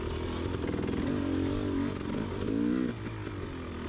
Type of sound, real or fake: real